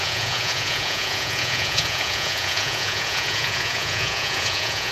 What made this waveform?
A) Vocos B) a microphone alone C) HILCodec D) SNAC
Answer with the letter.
A